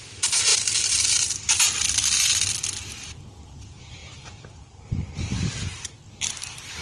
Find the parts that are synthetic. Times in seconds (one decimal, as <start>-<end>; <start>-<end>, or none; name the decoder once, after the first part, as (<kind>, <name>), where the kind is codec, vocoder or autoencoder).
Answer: 0.5-1.9 (vocoder, BigVGAN v2); 4.0-6.8